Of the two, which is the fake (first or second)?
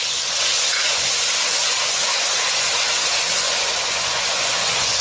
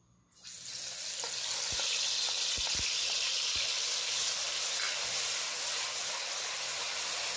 first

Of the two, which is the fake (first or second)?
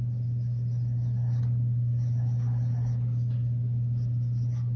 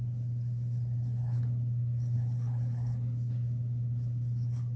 second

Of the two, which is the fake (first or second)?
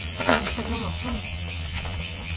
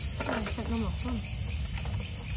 first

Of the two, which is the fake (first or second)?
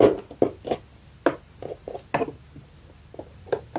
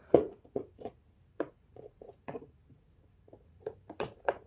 second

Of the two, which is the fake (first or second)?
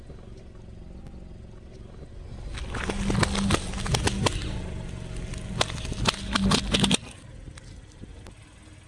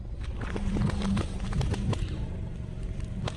second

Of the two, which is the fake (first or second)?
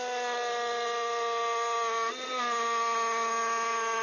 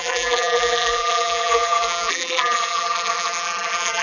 second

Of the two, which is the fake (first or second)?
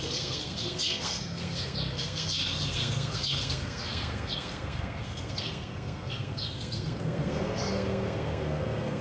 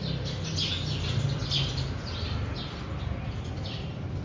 first